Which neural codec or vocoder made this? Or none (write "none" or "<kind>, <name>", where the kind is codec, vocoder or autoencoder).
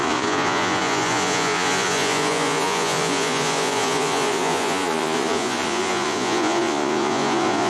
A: vocoder, Vocos